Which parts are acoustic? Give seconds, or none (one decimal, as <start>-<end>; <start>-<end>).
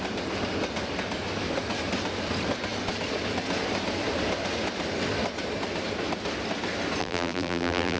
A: 0.0-7.0